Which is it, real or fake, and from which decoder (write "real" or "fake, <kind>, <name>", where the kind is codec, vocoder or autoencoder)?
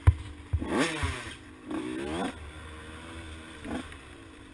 real